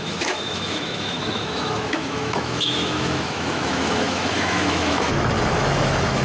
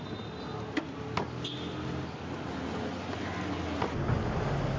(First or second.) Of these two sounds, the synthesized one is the first